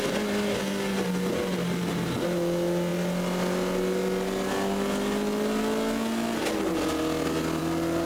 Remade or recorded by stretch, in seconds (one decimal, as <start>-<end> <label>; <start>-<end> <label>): 0.0-8.1 recorded